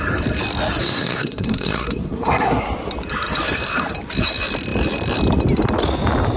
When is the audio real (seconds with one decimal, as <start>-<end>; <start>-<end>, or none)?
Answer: 0.0-0.8; 2.6-6.4